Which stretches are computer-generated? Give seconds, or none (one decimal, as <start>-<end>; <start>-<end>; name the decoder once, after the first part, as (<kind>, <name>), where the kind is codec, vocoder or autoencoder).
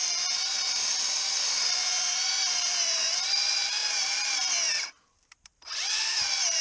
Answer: 0.0-6.6 (vocoder, BigVGAN v2)